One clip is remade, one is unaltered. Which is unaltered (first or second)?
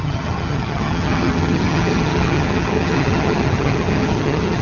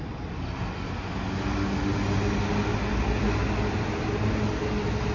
second